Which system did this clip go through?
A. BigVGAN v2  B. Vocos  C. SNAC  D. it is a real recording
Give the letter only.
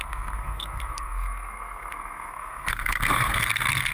C